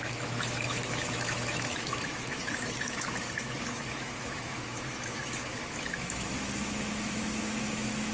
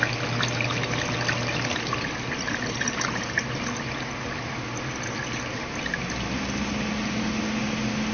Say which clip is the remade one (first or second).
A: first